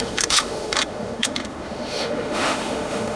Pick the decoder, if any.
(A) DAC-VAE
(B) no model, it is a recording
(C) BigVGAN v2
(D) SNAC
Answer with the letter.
A